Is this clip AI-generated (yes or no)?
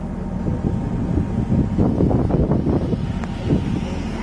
no